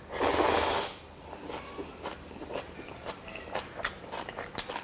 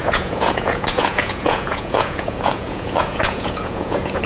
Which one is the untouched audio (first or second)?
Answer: first